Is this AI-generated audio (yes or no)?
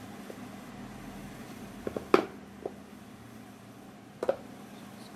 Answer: no